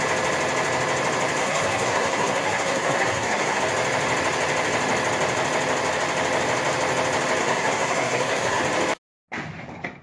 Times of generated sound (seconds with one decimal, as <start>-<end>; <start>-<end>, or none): 1.4-3.6; 7.4-8.6